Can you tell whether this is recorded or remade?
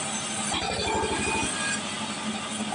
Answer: recorded